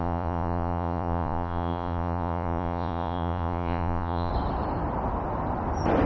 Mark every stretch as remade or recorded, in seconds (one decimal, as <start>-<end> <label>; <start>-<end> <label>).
0.0-4.3 remade; 4.3-6.1 recorded